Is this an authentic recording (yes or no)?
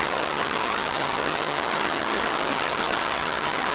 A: no